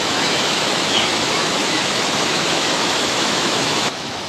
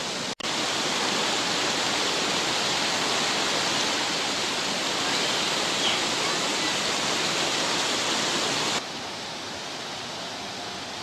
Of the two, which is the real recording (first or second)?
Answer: second